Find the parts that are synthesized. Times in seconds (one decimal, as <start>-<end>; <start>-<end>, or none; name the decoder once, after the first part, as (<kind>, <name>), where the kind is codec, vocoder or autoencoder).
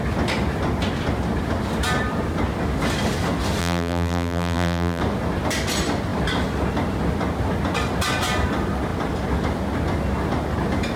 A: 3.6-5.0 (vocoder, BigVGAN v2)